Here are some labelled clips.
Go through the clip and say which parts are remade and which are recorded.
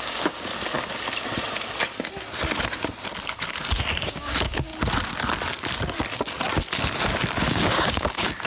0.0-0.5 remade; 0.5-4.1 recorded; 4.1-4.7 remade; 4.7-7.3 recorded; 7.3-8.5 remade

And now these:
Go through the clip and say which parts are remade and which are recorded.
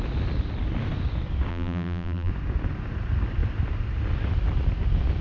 0.0-1.5 recorded; 1.5-2.3 remade; 2.3-5.2 recorded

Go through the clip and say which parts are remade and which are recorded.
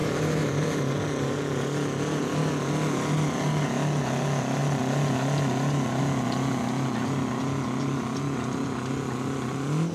0.0-0.6 remade; 0.6-9.9 recorded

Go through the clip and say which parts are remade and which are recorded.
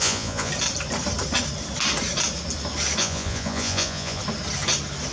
0.0-0.5 remade; 0.5-3.0 recorded; 3.0-4.2 remade; 4.2-5.1 recorded